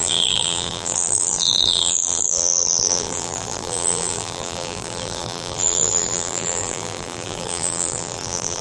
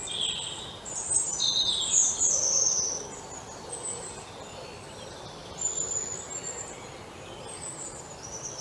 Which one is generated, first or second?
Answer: first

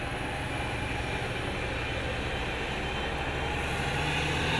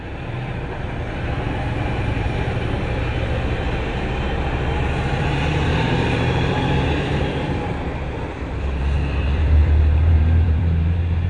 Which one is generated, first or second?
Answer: second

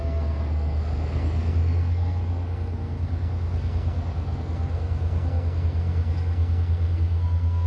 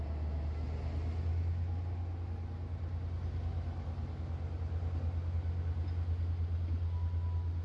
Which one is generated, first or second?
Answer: first